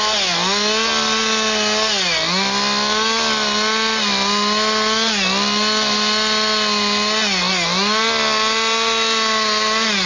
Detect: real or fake real